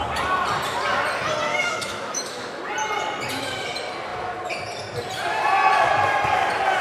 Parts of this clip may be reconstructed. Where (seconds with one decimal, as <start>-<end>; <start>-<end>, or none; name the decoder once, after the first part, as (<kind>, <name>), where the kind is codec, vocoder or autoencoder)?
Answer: 1.5-2.6 (autoencoder, DAC-VAE)